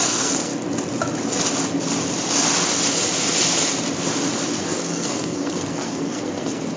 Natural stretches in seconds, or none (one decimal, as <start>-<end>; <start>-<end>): 0.5-4.6